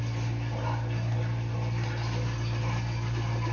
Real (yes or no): yes